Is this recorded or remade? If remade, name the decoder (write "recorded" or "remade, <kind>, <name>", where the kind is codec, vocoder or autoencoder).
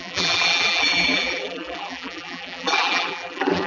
remade, vocoder, BigVGAN v2